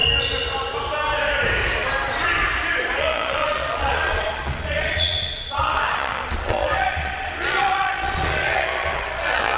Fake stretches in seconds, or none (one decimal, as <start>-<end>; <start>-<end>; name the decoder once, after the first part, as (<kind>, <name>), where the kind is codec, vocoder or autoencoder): 3.0-9.6 (vocoder, Vocos)